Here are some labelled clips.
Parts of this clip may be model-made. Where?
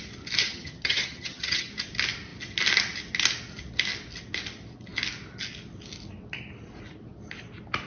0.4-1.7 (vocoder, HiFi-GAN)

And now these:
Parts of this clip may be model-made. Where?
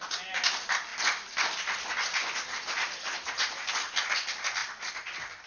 none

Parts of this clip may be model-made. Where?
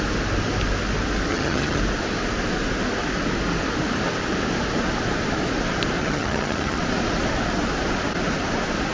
1.3-1.8 (vocoder, HiFi-GAN); 6.0-6.8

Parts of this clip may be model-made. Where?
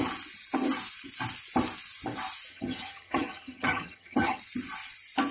2.5-4.4 (vocoder, HiFi-GAN)